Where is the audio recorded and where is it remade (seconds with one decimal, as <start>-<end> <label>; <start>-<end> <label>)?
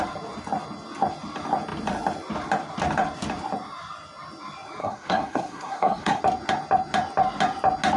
0.0-4.8 recorded; 4.8-6.2 remade; 6.2-8.0 recorded